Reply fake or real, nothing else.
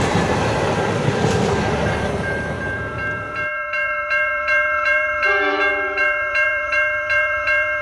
fake